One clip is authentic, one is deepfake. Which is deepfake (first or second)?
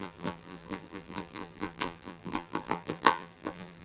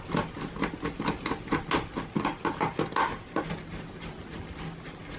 first